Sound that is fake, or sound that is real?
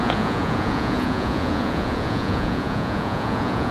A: fake